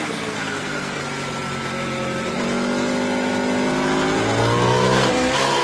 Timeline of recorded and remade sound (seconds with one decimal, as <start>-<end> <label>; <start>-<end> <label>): 0.0-1.0 remade; 1.0-4.4 recorded; 4.4-5.6 remade